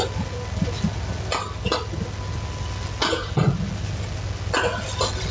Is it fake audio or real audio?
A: real